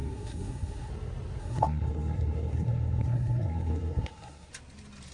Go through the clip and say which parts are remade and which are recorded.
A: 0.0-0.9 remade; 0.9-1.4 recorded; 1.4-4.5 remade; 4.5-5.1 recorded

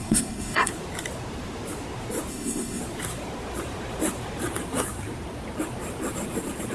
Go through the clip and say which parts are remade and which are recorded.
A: 0.0-0.7 remade; 0.7-2.3 recorded; 2.3-2.8 remade; 2.8-6.7 recorded

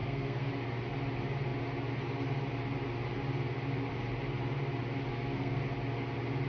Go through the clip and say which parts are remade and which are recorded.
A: 0.0-0.5 remade; 0.5-5.1 recorded; 5.1-5.6 remade; 5.6-6.5 recorded